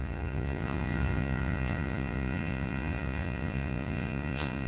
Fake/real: fake